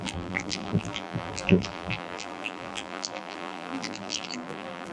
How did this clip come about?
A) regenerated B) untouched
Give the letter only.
A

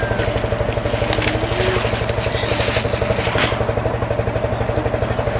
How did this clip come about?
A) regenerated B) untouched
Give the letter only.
B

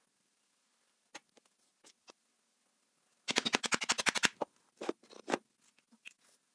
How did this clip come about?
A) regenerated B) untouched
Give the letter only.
B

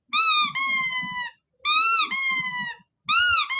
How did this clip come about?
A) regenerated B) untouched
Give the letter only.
B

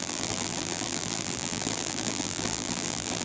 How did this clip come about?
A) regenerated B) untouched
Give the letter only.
A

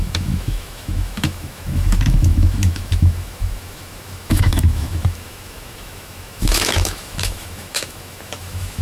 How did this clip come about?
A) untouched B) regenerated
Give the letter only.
B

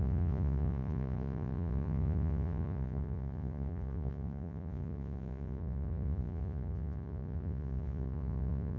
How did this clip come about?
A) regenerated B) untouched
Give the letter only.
A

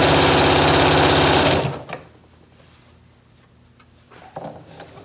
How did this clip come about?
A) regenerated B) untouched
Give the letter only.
B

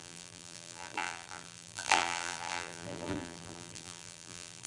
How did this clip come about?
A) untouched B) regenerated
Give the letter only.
B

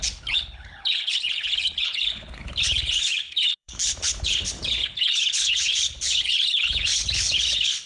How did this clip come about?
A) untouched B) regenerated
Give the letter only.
B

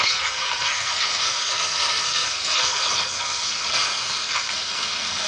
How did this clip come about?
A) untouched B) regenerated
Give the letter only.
B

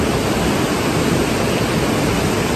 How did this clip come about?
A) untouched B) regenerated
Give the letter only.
A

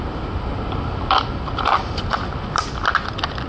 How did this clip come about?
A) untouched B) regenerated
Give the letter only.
A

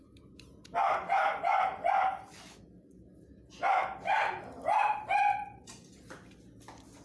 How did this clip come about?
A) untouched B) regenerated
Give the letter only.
A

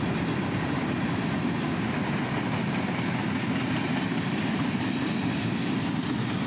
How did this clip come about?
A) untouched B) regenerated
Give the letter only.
A